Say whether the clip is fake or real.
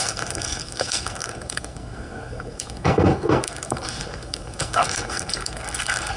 fake